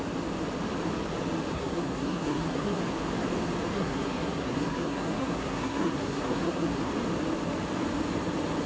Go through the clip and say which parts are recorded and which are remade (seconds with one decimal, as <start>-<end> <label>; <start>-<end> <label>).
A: 0.0-1.5 recorded; 1.5-2.8 remade; 2.8-3.7 recorded; 3.7-6.9 remade; 6.9-8.7 recorded